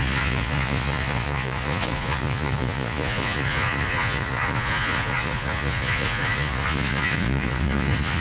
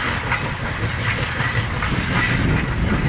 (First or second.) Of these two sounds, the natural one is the second